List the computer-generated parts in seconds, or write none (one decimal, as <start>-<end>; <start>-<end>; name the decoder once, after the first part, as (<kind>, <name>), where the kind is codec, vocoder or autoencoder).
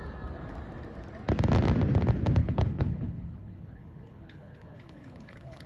2.4-5.7 (codec, HILCodec)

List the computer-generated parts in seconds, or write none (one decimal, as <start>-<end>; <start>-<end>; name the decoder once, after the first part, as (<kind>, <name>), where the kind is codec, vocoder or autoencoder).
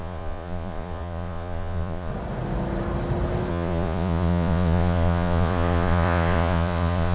0.0-2.1 (vocoder, Vocos); 3.5-7.1